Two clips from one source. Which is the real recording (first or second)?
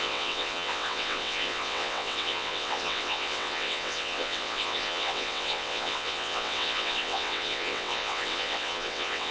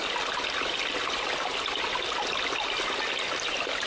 second